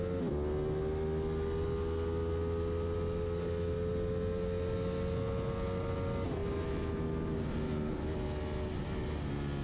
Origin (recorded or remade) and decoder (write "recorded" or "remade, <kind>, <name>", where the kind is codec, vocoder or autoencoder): recorded